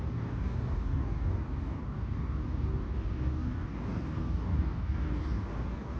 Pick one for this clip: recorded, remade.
remade